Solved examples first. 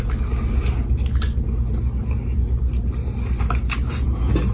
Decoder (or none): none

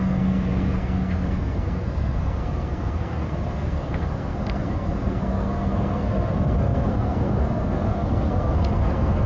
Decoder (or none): codec, SNAC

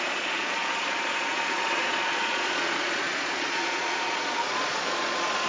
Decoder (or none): vocoder, Vocos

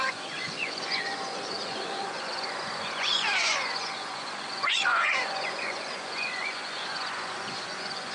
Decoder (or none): vocoder, Vocos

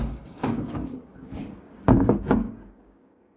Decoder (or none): codec, DAC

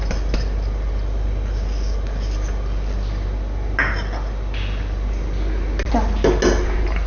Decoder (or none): none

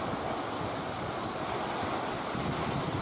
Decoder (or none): none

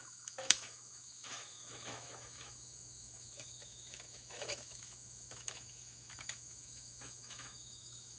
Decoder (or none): autoencoder, DAC-VAE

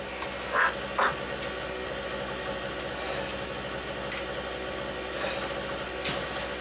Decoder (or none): none